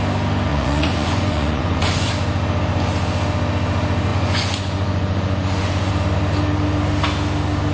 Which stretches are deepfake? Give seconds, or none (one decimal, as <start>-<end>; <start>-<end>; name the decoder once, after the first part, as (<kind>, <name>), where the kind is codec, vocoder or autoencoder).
0.5-2.1 (vocoder, Vocos); 4.1-5.9